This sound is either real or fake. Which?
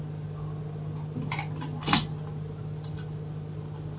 real